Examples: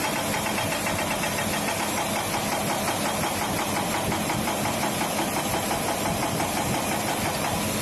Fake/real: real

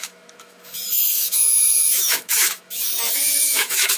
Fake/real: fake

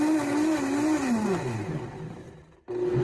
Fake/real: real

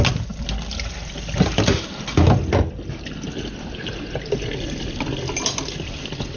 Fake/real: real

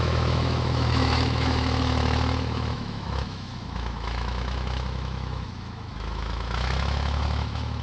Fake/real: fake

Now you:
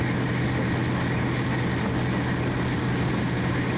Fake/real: real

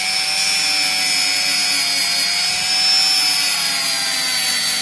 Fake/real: real